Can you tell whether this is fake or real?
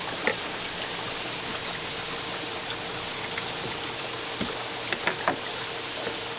real